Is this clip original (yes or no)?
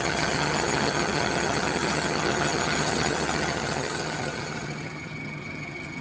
no